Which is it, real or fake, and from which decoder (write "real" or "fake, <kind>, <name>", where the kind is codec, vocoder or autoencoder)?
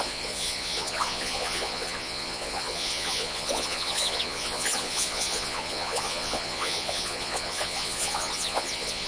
fake, vocoder, Vocos